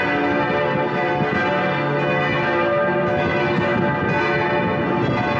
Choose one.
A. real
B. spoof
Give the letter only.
A